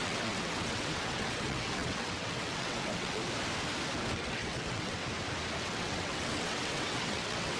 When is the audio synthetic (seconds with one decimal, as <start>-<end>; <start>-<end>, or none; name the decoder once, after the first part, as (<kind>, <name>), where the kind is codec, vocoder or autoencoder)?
0.0-3.2 (vocoder, WaveNeXt); 4.1-5.0; 5.6-7.6